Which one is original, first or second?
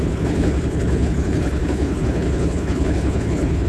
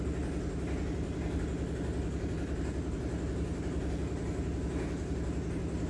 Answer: second